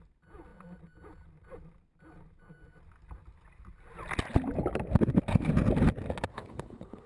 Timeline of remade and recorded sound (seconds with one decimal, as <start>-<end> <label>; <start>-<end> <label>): 0.0-6.3 recorded; 6.3-7.1 remade